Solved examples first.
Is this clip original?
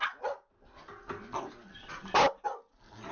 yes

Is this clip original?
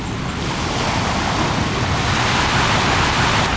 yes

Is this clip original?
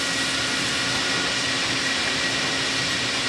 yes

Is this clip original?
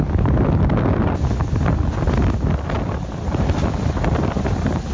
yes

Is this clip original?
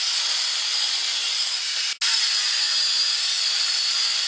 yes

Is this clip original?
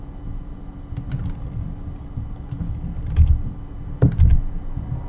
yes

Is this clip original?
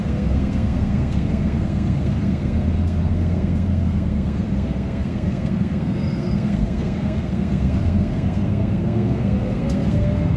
no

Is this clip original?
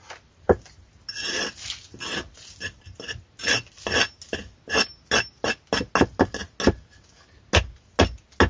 yes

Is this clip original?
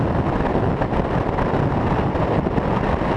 yes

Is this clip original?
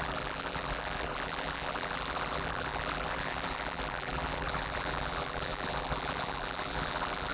no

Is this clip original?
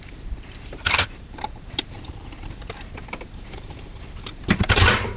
no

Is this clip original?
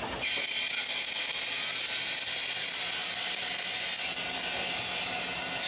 yes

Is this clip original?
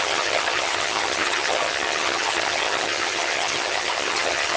no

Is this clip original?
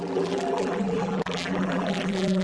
no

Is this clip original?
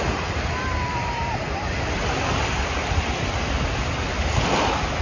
yes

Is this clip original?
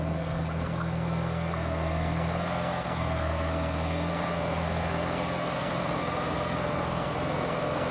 no